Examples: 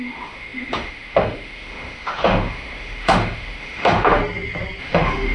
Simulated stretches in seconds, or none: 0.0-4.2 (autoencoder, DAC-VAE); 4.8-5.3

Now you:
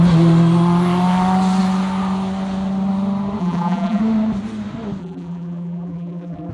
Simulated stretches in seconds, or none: 3.4-4.0 (vocoder, BigVGAN v2); 5.0-6.5

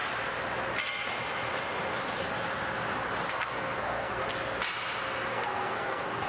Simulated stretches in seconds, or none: 3.3-4.2 (codec, SNAC); 5.3-6.3

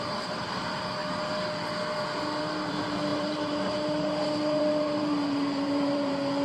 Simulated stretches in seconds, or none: 0.0-1.0 (vocoder, BigVGAN v2); 2.7-6.4

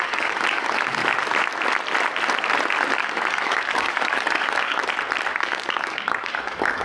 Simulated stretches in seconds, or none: 0.0-1.0 (codec, DAC); 2.9-4.8; 5.4-6.8

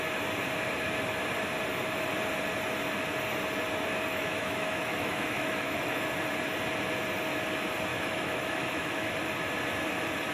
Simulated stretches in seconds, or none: 4.1-6.0 (autoencoder, DAC-VAE); 7.9-9.1

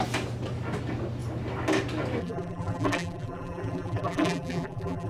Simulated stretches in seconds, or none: 2.2-5.1 (vocoder, BigVGAN v2)